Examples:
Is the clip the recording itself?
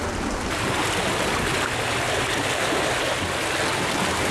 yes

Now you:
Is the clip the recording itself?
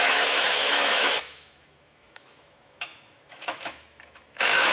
no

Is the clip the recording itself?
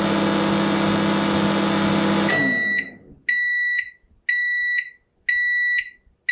yes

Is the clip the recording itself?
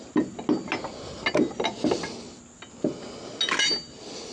yes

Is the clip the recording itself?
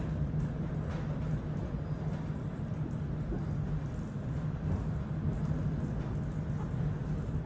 yes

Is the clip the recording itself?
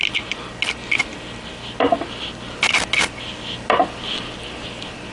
yes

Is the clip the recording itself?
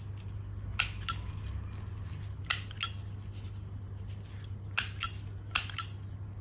yes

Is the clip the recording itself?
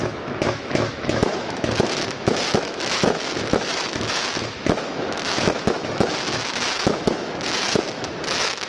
no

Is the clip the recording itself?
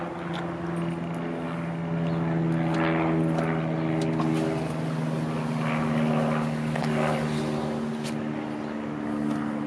yes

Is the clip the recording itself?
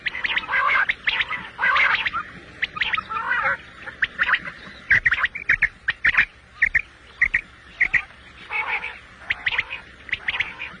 yes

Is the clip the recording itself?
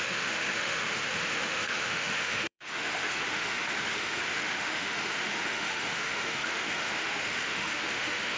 no